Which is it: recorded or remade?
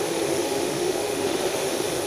remade